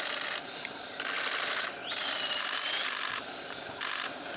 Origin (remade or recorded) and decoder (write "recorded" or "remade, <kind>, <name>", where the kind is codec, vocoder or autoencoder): remade, vocoder, BigVGAN v2